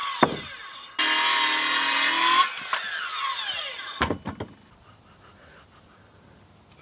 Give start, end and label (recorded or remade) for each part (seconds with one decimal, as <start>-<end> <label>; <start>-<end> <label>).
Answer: 0.0-6.8 recorded